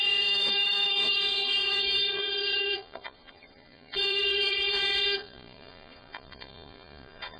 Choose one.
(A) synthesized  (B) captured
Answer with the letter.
A